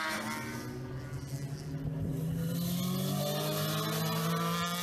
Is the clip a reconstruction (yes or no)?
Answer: no